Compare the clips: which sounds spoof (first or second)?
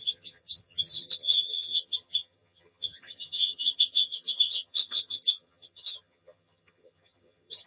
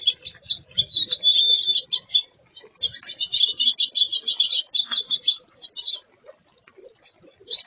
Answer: first